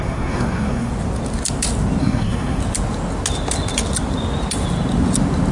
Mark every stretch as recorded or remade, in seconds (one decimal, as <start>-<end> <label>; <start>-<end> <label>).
0.0-0.9 remade; 0.9-2.0 recorded; 2.0-2.6 remade; 2.6-5.5 recorded